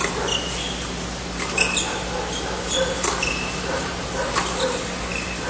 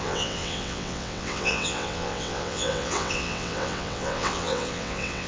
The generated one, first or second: second